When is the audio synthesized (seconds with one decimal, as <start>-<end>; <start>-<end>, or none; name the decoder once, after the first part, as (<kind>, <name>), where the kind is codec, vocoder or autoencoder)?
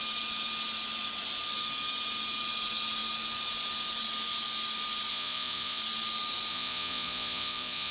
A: 5.1-5.8 (vocoder, Vocos); 6.5-7.9